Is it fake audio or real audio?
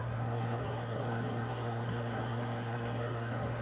fake